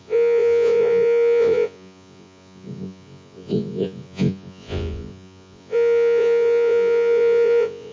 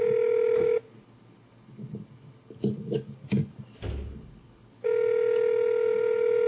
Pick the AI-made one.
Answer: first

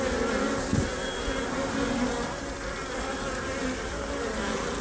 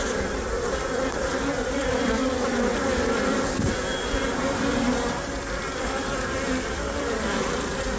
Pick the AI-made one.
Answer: second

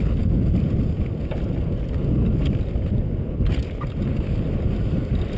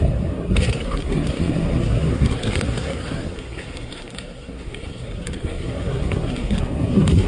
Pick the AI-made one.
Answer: second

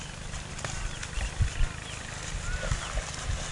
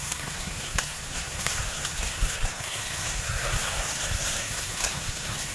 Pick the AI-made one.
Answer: second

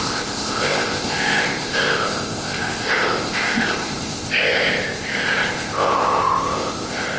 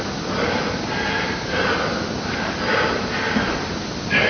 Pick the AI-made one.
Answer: first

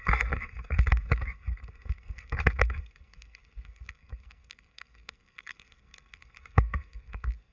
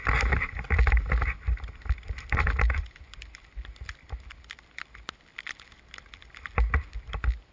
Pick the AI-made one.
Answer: first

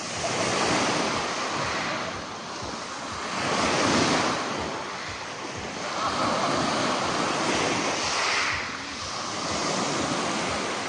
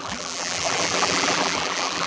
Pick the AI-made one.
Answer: second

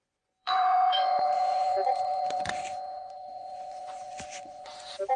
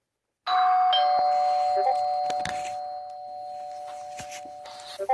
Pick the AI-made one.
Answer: first